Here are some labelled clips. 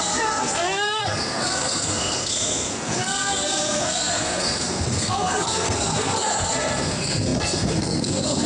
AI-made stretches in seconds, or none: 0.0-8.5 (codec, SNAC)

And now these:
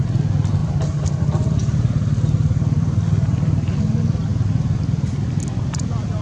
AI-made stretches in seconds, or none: 0.6-3.8 (vocoder, BigVGAN v2)

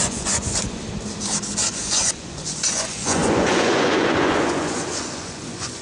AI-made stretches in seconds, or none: 0.0-0.8 (vocoder, Vocos); 1.7-5.8

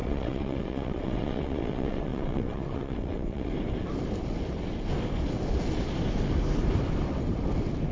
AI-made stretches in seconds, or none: 0.0-3.5 (vocoder, WaveNeXt)

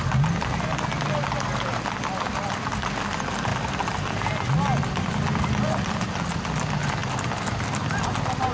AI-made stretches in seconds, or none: 3.5-4.5 (vocoder, BigVGAN v2)

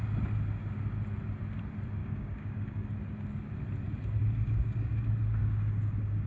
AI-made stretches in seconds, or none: 2.0-2.9 (codec, DAC); 4.2-4.9; 5.4-6.3

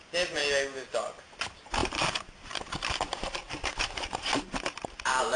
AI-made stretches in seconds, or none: 0.0-0.4 (vocoder, BigVGAN v2); 1.2-5.4

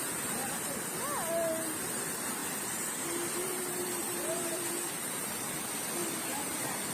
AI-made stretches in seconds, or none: 0.4-1.0 (vocoder, BigVGAN v2); 2.4-4.7; 6.0-6.9